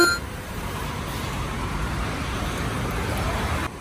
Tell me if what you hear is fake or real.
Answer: fake